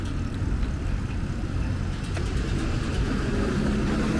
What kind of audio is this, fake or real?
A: real